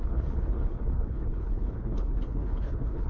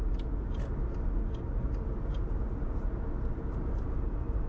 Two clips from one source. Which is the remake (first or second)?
first